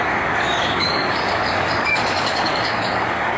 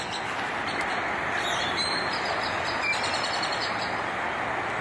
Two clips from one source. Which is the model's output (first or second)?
first